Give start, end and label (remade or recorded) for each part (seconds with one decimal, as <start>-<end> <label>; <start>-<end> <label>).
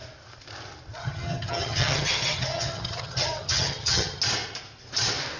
0.0-1.0 recorded; 1.0-4.2 remade; 4.2-5.4 recorded